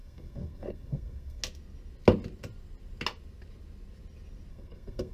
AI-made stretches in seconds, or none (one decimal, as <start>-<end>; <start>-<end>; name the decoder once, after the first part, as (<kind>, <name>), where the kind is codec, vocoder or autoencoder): 0.0-1.4 (codec, SNAC); 4.5-5.1